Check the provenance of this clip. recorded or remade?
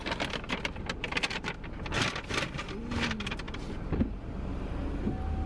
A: recorded